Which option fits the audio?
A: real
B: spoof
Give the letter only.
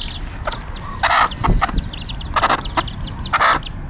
A